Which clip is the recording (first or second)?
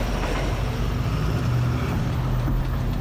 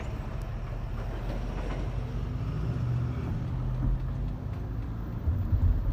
second